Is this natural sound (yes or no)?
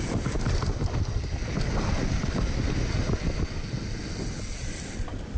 yes